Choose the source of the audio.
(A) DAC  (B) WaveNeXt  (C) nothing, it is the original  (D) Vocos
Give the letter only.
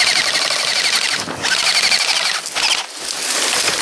C